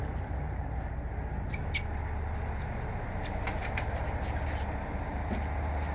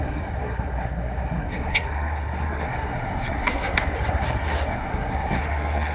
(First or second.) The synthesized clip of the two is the second